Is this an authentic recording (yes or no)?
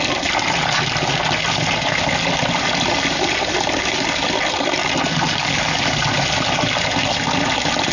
yes